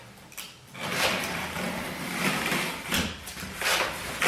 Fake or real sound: real